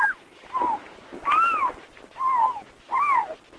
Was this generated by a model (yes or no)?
no